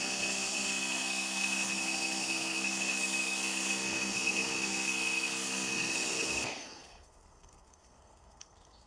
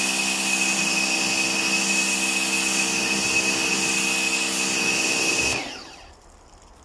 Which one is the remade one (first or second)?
first